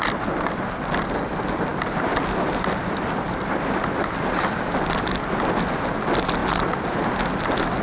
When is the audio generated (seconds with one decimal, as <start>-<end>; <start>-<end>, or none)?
none